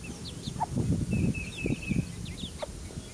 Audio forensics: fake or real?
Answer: real